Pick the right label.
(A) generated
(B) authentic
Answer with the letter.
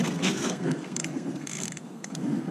A